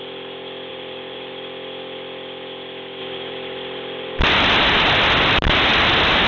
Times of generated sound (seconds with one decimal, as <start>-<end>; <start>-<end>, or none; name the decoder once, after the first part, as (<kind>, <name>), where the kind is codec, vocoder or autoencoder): 0.7-1.3 (vocoder, BigVGAN v2); 3.0-4.2